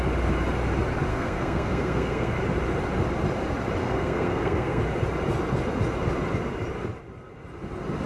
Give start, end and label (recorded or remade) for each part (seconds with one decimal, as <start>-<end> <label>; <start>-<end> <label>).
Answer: 0.0-1.1 recorded; 1.1-2.3 remade; 2.3-3.8 recorded; 3.8-4.8 remade; 4.8-8.1 recorded